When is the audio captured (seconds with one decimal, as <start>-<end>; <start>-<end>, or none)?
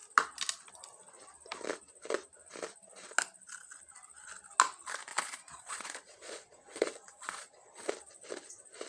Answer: 0.0-5.1; 7.9-8.9